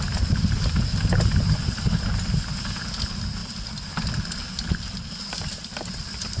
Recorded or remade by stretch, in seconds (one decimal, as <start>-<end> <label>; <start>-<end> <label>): 0.0-3.4 recorded; 3.4-6.4 remade